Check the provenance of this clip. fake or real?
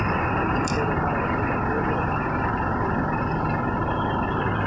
real